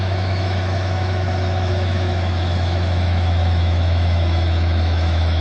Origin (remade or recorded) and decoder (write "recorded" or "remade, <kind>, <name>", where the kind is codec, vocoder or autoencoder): remade, autoencoder, DAC-VAE